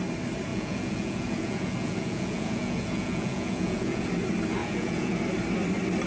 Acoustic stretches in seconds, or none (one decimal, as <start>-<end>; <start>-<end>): 0.0-0.5; 4.1-4.6; 5.2-6.1